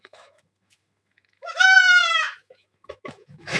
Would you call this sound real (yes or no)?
no